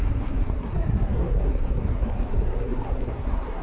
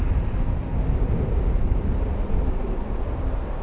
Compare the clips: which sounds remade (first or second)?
first